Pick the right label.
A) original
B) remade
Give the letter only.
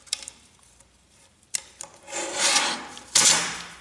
B